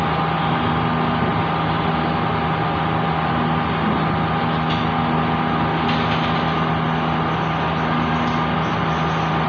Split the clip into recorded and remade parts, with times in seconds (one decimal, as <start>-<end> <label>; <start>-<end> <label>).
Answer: 0.0-9.5 recorded